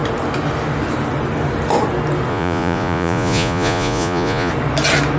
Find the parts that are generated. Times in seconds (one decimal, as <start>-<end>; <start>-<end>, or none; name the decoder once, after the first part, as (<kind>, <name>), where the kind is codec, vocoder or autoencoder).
2.3-4.5 (vocoder, Vocos)